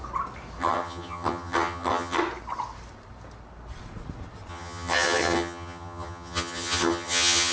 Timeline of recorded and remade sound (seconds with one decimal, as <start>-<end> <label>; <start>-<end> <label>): 0.0-0.6 recorded; 0.6-2.2 remade; 2.2-4.5 recorded; 4.5-7.5 remade